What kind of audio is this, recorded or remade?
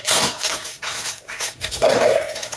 remade